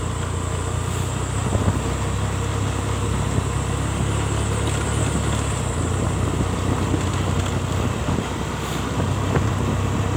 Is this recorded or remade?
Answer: recorded